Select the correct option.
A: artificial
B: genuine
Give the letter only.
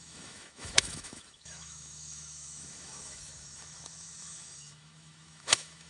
A